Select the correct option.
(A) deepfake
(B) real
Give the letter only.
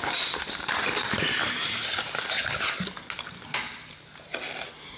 B